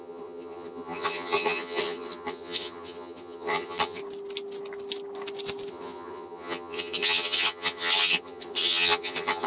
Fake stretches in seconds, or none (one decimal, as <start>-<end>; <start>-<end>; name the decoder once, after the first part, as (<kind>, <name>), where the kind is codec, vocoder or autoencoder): 0.0-4.0 (vocoder, HiFi-GAN); 5.7-9.5

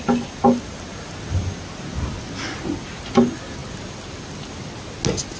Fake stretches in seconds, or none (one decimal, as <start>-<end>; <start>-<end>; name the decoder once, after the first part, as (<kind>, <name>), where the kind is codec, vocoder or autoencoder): none

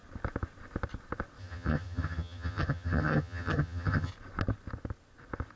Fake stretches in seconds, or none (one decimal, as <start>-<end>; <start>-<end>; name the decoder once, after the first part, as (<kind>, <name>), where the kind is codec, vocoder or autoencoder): 1.4-4.1 (vocoder, HiFi-GAN)

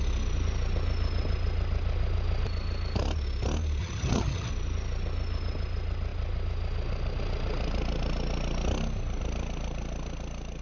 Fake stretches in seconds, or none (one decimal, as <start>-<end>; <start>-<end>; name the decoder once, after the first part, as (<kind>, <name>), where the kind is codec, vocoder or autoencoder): 3.8-4.5 (vocoder, HiFi-GAN)